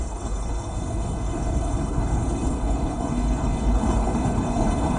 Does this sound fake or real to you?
fake